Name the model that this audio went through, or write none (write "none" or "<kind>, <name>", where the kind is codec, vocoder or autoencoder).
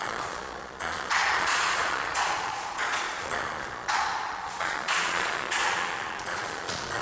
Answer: vocoder, Vocos